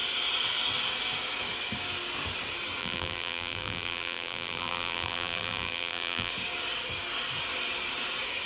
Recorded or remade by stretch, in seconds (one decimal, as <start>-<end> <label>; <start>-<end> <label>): 0.0-2.8 recorded; 2.8-6.3 remade; 6.3-8.5 recorded